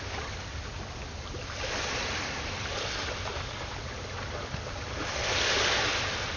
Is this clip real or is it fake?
real